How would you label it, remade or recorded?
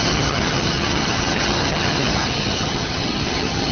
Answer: remade